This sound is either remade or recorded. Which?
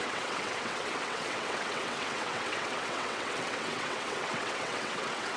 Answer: remade